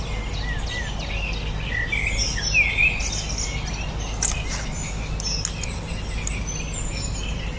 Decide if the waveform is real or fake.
real